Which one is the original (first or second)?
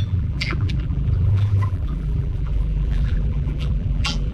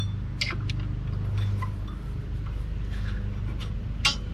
second